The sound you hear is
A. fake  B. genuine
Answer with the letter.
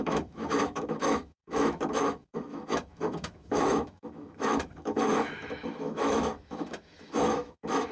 A